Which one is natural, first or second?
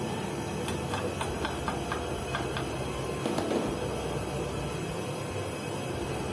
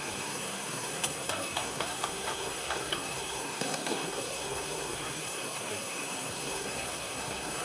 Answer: first